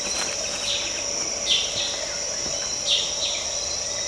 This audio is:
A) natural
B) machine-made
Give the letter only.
A